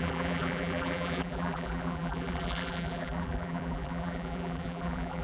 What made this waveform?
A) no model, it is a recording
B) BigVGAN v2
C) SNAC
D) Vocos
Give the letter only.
B